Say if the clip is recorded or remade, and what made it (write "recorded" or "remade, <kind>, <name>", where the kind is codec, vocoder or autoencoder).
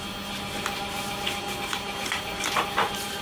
recorded